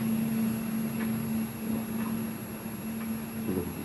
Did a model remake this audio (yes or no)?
no